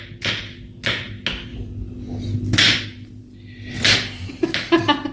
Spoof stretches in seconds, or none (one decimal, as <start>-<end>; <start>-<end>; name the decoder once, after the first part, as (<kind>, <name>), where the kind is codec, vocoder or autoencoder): none

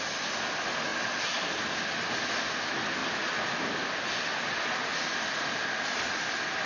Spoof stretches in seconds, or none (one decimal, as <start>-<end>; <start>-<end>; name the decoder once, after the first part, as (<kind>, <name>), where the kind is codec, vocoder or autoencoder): none